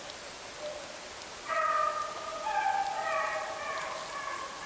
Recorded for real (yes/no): yes